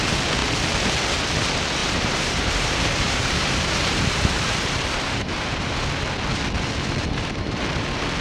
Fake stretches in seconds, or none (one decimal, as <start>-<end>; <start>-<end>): 1.8-5.7; 7.0-7.6